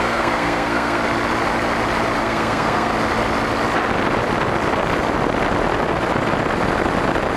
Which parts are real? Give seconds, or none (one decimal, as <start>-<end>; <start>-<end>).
1.0-2.2; 2.9-7.4